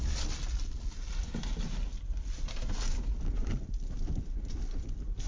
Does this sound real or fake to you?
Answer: real